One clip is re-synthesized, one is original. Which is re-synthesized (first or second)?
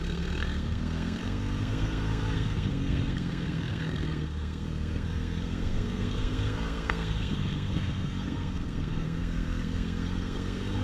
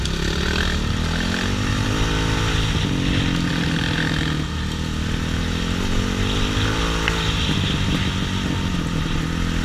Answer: first